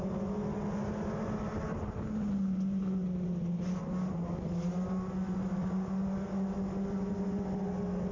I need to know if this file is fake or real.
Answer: real